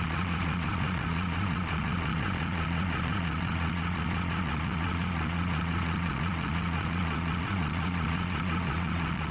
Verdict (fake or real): fake